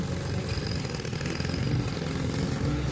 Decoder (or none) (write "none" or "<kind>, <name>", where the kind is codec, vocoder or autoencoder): none